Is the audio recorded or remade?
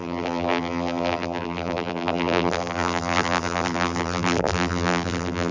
remade